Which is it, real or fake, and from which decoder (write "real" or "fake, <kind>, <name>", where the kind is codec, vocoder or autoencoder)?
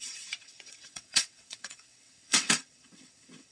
fake, vocoder, WaveNeXt